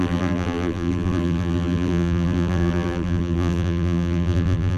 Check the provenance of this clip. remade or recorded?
remade